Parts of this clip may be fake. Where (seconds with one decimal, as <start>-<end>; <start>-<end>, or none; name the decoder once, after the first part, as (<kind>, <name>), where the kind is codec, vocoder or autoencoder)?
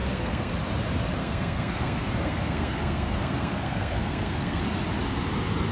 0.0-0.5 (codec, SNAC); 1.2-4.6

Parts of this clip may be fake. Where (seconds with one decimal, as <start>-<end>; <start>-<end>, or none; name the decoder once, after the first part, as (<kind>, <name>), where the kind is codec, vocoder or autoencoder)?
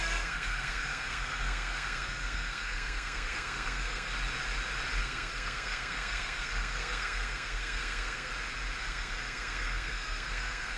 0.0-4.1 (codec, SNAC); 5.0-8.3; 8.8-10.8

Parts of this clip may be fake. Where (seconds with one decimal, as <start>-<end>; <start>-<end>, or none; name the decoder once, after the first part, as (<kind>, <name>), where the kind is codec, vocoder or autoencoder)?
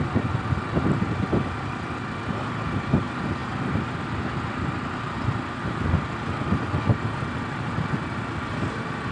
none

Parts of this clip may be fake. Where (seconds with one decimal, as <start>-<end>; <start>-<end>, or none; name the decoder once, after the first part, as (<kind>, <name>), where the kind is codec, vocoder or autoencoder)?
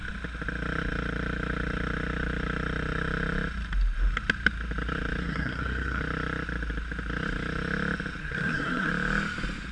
5.2-6.0 (codec, SNAC); 8.2-8.9